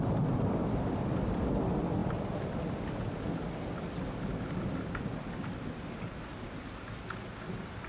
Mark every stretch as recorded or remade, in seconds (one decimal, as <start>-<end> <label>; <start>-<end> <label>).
0.0-7.9 recorded